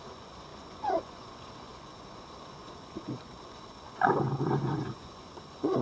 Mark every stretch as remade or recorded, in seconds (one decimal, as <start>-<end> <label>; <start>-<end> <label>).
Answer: 0.0-5.8 remade